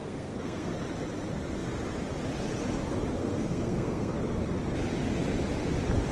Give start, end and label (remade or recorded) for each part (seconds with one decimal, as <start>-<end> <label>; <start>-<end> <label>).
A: 0.0-0.7 remade; 0.7-3.2 recorded; 3.2-4.2 remade; 4.2-6.1 recorded